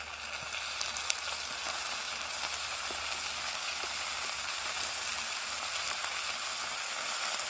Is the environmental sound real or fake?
real